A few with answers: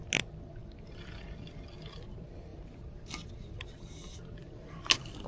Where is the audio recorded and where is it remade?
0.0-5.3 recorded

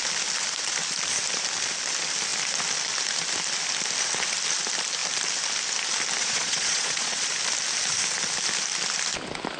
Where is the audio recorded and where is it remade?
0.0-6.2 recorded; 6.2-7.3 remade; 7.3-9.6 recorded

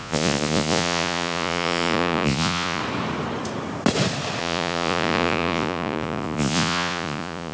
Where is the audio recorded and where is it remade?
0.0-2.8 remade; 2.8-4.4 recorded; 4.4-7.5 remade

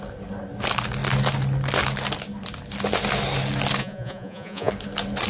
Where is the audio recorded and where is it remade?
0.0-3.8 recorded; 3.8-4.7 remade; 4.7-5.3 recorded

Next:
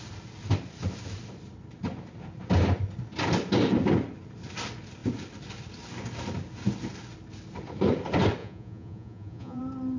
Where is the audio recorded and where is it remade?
0.0-8.4 recorded; 8.4-9.6 remade; 9.6-10.0 recorded